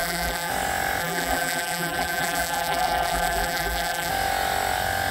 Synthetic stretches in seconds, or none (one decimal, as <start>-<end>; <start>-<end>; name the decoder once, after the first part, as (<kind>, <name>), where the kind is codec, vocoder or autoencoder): 0.0-0.5 (vocoder, BigVGAN v2); 1.0-4.1